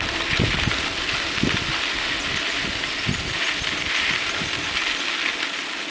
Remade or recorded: recorded